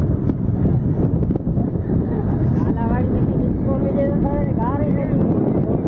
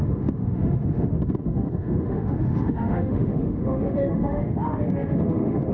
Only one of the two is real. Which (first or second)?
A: first